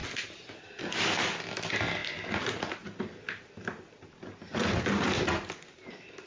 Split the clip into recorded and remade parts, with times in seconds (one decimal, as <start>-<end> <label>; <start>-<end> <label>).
0.0-6.3 recorded